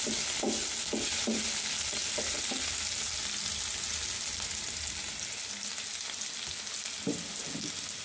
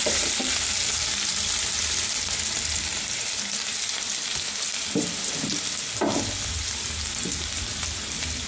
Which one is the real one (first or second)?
first